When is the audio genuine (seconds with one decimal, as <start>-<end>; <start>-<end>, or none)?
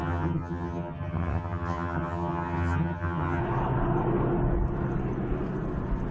3.4-6.1